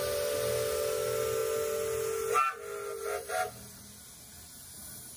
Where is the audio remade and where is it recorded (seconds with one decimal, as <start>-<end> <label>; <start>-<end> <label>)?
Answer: 0.0-5.2 recorded

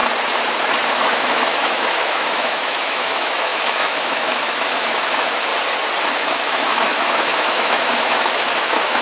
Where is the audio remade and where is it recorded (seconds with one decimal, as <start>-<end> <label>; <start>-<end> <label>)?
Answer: 0.0-0.9 recorded; 0.9-5.5 remade; 5.5-6.1 recorded; 6.1-9.0 remade

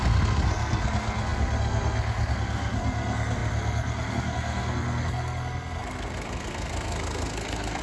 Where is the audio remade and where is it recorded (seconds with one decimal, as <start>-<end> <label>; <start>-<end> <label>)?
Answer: 0.0-7.8 remade